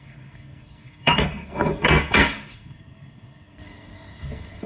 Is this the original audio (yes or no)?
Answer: no